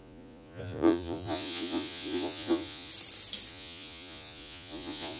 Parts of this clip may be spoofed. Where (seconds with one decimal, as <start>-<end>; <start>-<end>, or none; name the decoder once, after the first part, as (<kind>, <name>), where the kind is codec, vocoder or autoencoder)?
0.0-2.9 (vocoder, Vocos); 3.5-5.2